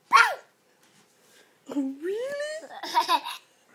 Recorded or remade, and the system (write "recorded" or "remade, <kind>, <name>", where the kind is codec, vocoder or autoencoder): recorded